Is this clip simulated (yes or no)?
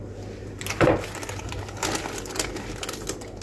no